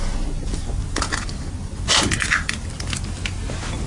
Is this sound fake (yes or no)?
no